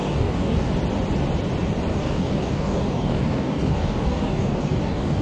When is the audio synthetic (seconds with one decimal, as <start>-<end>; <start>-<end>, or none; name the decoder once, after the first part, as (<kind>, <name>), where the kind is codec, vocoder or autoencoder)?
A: 0.0-0.7 (codec, DAC); 1.9-5.2